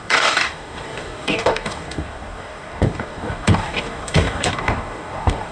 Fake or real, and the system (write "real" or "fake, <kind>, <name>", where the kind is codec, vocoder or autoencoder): fake, codec, DAC